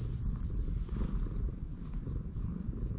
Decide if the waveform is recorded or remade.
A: recorded